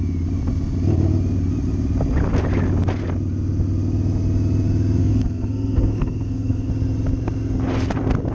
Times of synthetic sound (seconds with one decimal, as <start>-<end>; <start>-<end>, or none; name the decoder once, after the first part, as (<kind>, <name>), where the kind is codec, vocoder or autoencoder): 5.0-6.7 (codec, SNAC)